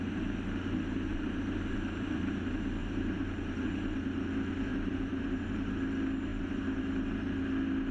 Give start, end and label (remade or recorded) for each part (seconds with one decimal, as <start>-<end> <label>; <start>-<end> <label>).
0.0-1.1 recorded; 1.1-2.2 remade; 2.2-2.8 recorded; 2.8-3.7 remade; 3.7-4.7 recorded; 4.7-5.5 remade; 5.5-7.9 recorded